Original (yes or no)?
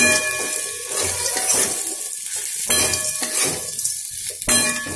yes